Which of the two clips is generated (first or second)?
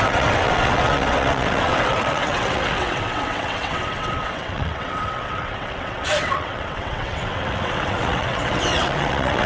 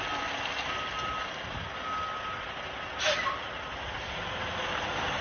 first